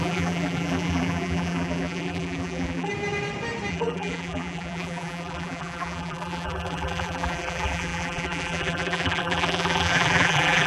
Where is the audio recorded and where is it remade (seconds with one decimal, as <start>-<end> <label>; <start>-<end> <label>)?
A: 0.0-2.9 remade; 2.9-3.7 recorded; 3.7-10.7 remade